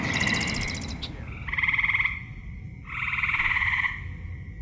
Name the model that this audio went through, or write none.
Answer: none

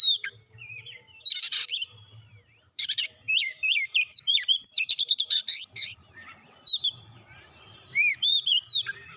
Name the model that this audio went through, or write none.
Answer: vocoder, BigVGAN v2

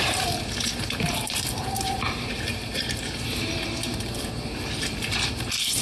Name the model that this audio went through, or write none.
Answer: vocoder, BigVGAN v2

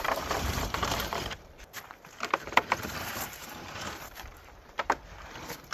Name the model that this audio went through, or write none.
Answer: vocoder, BigVGAN v2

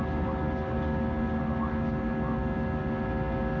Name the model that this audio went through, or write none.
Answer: none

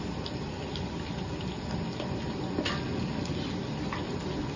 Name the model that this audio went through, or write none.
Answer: none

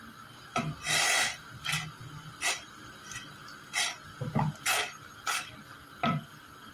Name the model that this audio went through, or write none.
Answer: vocoder, BigVGAN v2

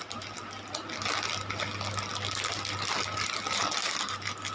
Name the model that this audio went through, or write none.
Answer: none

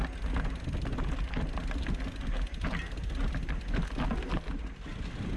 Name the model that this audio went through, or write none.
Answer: none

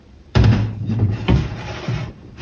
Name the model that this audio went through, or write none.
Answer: vocoder, BigVGAN v2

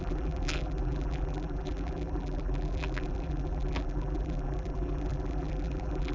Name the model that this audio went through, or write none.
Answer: vocoder, BigVGAN v2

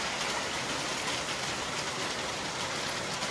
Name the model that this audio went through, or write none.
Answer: none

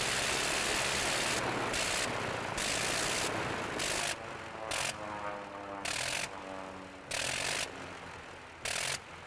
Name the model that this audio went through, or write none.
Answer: none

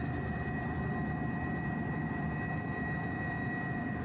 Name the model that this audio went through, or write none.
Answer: vocoder, BigVGAN v2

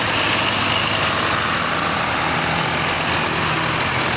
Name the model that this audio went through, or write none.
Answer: none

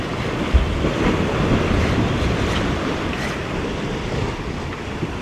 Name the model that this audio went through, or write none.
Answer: vocoder, BigVGAN v2